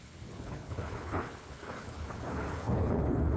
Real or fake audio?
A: fake